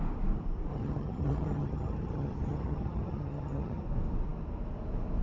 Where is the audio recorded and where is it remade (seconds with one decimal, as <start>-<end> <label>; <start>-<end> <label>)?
0.0-0.7 recorded; 0.7-3.8 remade; 3.8-5.2 recorded